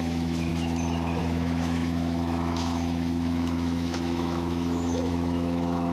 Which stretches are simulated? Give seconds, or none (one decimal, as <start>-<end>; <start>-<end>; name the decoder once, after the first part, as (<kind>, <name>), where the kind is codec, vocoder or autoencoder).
0.0-0.5 (autoencoder, DAC-VAE); 1.2-5.9

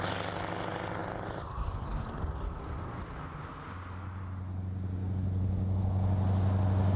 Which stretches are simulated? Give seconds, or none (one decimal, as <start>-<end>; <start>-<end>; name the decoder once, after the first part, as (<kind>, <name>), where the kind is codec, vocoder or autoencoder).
none

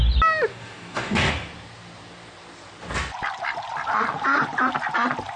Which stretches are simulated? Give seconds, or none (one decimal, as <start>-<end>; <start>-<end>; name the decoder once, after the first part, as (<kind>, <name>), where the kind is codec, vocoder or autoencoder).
0.5-1.3 (codec, DAC)

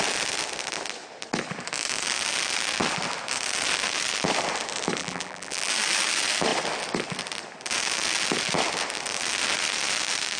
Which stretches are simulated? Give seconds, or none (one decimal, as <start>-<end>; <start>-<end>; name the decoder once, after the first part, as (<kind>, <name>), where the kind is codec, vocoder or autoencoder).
5.0-5.7 (vocoder, BigVGAN v2)

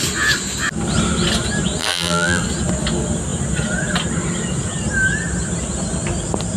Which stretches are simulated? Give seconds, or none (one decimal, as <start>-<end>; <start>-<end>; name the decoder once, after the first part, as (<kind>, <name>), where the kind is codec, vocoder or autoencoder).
1.8-2.4 (vocoder, BigVGAN v2)

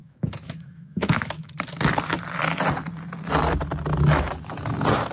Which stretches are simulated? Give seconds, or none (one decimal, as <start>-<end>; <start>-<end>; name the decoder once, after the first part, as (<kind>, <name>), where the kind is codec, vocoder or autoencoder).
0.0-1.5 (autoencoder, DAC-VAE)

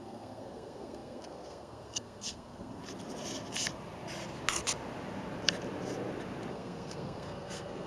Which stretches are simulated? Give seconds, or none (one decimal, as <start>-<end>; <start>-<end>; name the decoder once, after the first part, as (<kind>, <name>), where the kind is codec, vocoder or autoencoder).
0.0-2.8 (codec, SNAC); 6.5-7.9